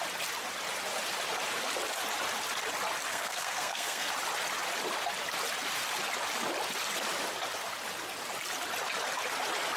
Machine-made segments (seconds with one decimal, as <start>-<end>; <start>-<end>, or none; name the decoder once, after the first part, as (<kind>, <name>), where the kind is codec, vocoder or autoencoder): 3.1-4.1 (codec, SNAC)